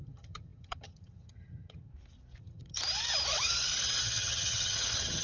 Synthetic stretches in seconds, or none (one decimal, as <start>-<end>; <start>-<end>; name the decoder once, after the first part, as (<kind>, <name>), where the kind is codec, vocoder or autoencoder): 0.0-1.9 (vocoder, HiFi-GAN); 2.4-2.8; 4.0-5.2